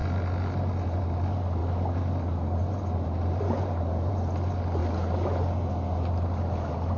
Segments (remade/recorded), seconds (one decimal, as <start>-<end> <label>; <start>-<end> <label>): 0.0-7.0 recorded